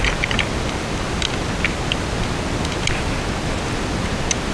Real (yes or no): yes